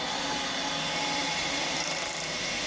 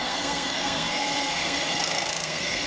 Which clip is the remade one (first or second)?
second